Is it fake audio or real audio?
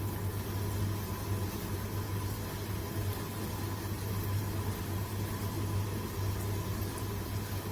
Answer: real